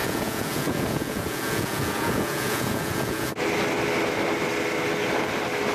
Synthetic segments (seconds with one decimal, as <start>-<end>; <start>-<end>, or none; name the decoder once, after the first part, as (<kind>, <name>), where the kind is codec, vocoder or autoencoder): 0.0-3.3 (vocoder, Vocos)